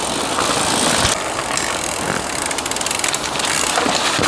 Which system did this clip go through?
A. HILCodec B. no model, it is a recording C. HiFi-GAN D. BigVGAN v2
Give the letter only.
B